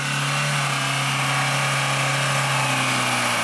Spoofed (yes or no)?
no